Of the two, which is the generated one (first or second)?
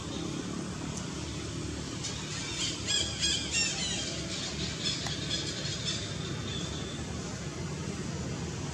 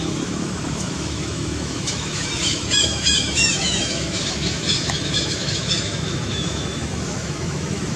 second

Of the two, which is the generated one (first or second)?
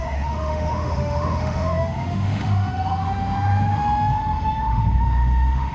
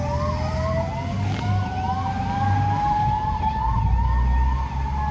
first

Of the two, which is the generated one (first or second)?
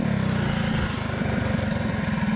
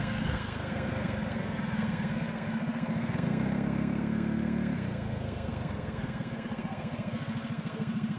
second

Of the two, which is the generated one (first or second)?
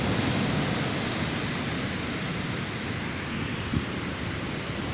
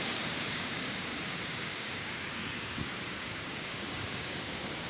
second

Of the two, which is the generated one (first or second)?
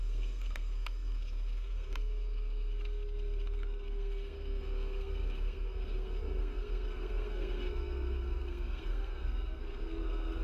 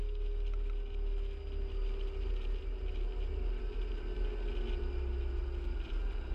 first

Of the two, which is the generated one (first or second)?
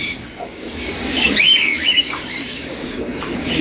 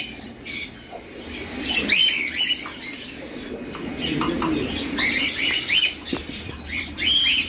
first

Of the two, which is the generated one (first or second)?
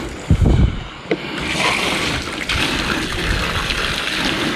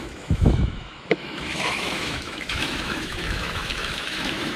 second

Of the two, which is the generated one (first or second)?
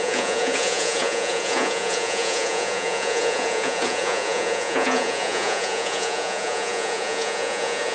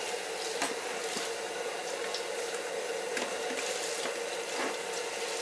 first